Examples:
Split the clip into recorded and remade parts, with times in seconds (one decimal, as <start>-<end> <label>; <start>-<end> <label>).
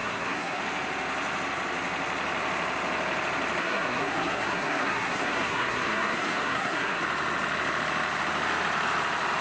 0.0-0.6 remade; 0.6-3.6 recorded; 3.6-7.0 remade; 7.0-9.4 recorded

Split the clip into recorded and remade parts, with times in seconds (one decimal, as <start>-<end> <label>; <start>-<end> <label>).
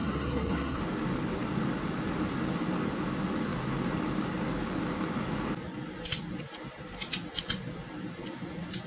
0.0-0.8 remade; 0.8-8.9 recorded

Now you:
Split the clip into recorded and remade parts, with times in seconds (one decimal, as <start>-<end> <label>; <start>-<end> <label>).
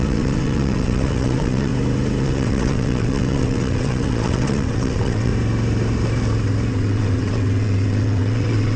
0.0-1.7 remade; 1.7-2.2 recorded; 2.2-5.3 remade; 5.3-6.7 recorded; 6.7-8.8 remade